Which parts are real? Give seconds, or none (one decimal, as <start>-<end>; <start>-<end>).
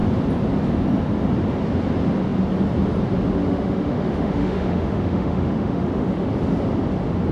0.0-3.4; 6.3-7.3